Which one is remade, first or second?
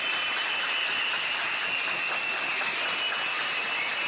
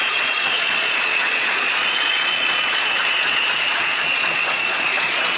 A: second